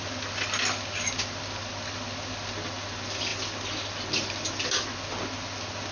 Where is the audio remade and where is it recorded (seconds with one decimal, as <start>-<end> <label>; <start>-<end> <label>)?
0.0-5.9 recorded